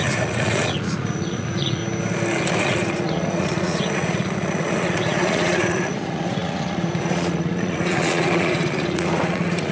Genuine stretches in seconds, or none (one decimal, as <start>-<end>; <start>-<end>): 1.8-2.6